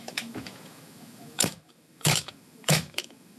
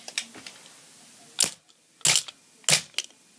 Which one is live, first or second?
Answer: second